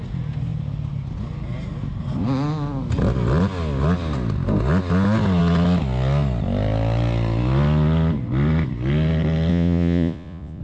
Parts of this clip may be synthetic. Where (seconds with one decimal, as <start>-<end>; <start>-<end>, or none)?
9.5-10.6